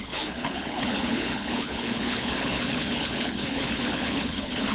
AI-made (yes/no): yes